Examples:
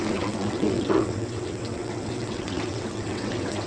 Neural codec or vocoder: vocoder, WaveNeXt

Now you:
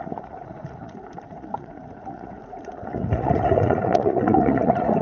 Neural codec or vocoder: vocoder, Vocos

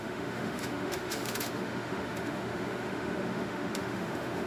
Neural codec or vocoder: autoencoder, DAC-VAE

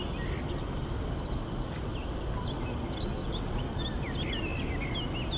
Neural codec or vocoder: none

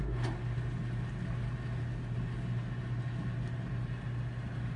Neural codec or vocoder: none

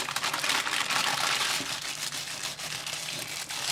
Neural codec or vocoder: none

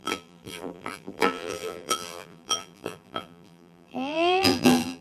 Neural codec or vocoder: vocoder, BigVGAN v2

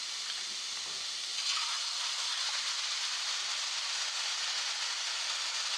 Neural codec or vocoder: none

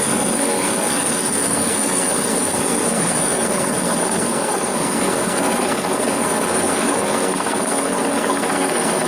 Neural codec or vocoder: codec, SNAC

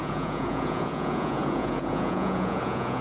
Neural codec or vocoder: vocoder, Vocos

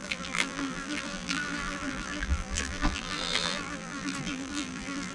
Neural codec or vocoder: vocoder, BigVGAN v2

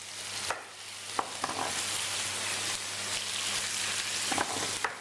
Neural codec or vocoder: none